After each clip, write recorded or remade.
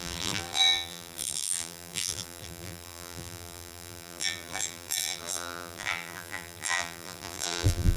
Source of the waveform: remade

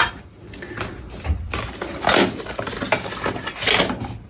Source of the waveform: recorded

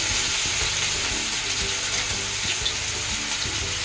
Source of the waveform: recorded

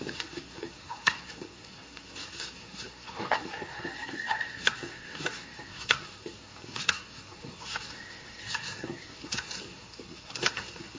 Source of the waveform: remade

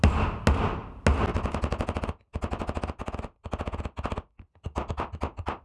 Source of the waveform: recorded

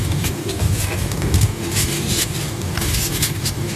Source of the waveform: remade